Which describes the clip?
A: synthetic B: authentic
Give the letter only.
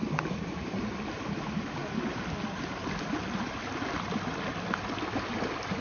B